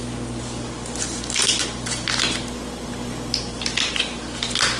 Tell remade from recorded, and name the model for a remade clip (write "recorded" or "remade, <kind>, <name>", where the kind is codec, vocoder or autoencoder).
recorded